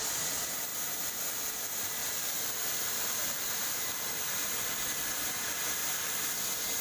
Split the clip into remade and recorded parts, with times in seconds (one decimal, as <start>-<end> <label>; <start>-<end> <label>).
0.0-2.0 recorded; 2.0-4.9 remade; 4.9-5.8 recorded; 5.8-6.3 remade; 6.3-6.8 recorded